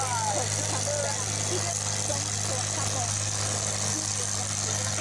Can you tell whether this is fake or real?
real